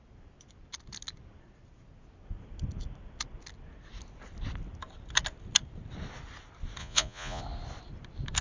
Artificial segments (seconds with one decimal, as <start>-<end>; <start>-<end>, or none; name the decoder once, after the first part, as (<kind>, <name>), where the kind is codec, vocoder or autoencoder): 6.8-7.4 (vocoder, Vocos)